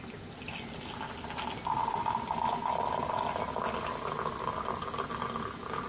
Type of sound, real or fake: real